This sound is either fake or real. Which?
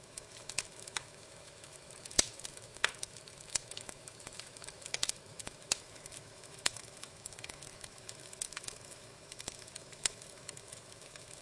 fake